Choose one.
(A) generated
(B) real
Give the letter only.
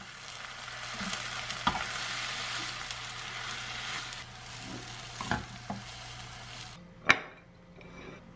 B